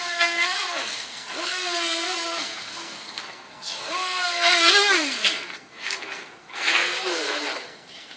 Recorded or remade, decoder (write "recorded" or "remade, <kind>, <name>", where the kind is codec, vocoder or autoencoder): remade, codec, SNAC